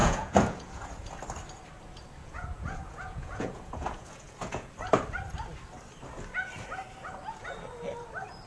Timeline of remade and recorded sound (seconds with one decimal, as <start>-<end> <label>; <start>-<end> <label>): 0.0-1.2 remade; 1.2-2.2 recorded; 2.2-4.7 remade; 4.7-8.5 recorded